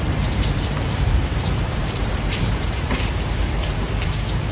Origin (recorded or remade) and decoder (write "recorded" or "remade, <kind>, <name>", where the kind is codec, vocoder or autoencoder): remade, vocoder, BigVGAN v2